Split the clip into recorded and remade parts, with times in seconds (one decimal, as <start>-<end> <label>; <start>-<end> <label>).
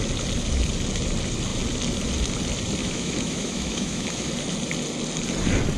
0.0-2.8 recorded; 2.8-4.3 remade; 4.3-5.8 recorded